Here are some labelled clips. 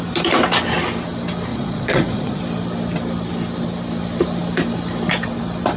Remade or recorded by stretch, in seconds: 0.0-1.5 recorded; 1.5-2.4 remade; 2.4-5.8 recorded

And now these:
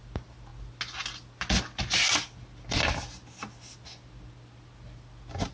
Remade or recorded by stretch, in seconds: 0.0-5.5 recorded

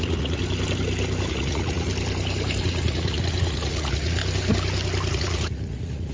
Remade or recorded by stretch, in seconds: 0.0-0.4 remade; 0.4-1.3 recorded; 1.3-1.9 remade; 1.9-2.6 recorded; 2.6-4.2 remade; 4.2-5.1 recorded; 5.1-6.1 remade